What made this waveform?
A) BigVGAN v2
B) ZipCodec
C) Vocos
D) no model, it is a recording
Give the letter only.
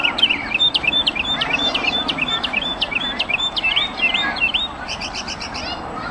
A